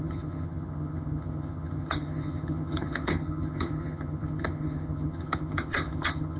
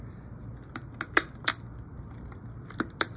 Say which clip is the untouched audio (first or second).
second